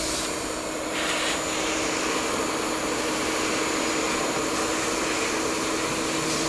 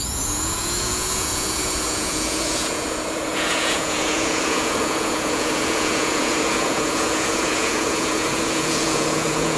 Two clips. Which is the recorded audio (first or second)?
first